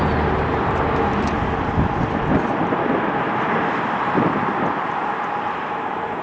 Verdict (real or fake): real